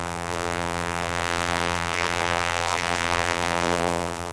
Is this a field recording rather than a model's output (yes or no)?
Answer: no